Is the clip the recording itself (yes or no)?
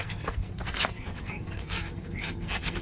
no